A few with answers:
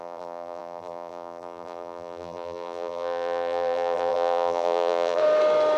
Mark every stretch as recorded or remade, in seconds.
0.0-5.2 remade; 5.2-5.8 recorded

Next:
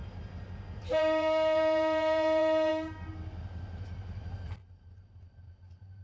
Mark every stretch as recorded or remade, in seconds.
0.0-0.8 recorded; 0.8-2.7 remade; 2.7-4.2 recorded; 4.2-6.0 remade

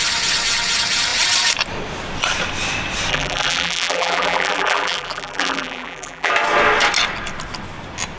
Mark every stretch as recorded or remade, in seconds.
0.0-3.1 recorded; 3.1-6.3 remade; 6.3-8.2 recorded

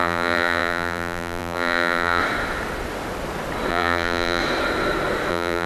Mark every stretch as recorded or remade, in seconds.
0.0-2.2 remade; 2.2-3.7 recorded; 3.7-4.4 remade; 4.4-5.3 recorded; 5.3-5.7 remade